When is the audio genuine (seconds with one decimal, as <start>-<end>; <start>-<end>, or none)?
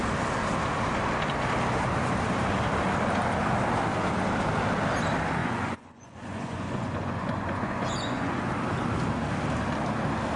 0.0-5.4; 8.5-10.4